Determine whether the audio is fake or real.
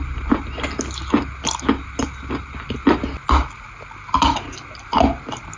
real